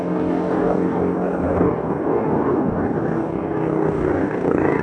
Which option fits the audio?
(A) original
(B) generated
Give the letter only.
B